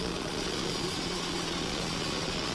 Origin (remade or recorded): remade